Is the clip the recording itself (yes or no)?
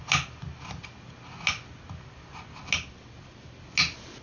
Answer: yes